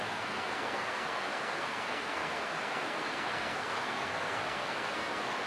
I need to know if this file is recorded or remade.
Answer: remade